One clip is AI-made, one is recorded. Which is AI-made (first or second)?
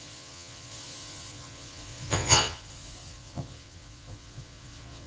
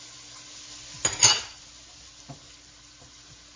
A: first